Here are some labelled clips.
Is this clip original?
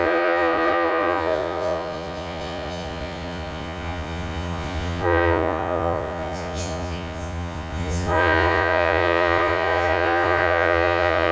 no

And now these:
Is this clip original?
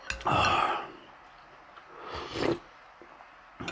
yes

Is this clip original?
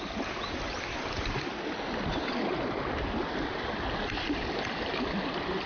yes